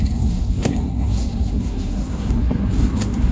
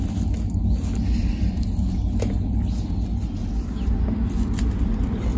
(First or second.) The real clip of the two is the second